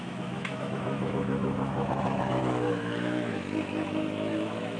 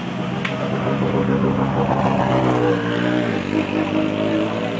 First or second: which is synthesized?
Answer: first